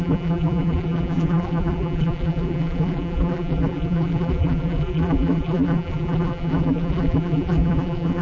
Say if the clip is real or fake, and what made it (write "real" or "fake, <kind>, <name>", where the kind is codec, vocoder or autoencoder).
fake, vocoder, BigVGAN v2